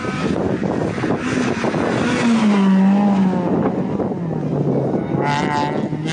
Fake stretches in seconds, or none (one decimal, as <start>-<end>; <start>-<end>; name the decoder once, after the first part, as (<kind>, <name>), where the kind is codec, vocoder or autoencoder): none